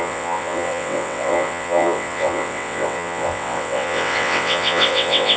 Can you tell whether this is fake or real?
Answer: fake